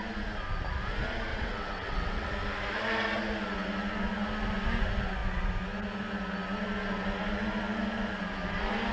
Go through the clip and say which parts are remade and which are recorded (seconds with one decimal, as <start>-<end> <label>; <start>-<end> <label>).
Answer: 0.0-1.3 recorded; 1.3-2.3 remade; 2.3-8.9 recorded